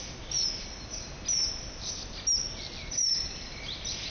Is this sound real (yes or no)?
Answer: yes